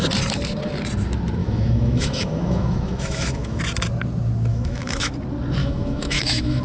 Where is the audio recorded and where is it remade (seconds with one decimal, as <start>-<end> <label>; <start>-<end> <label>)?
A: 0.0-1.4 recorded; 1.4-3.6 remade; 3.6-4.5 recorded; 4.5-5.1 remade; 5.1-5.6 recorded; 5.6-6.6 remade